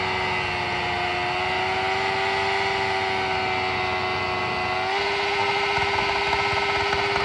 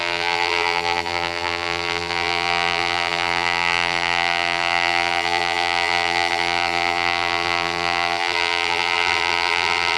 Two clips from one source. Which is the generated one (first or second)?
second